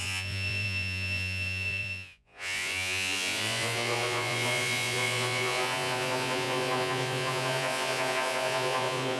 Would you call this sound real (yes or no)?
no